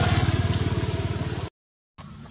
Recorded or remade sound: recorded